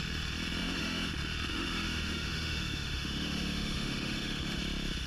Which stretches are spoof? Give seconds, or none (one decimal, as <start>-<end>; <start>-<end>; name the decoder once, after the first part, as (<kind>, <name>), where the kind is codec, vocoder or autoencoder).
0.6-1.1 (autoencoder, DAC-VAE); 1.5-4.6